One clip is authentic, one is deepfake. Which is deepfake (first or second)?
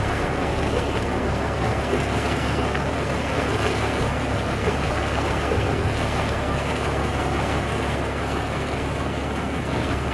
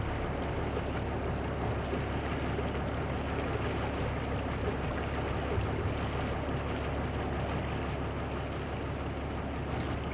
first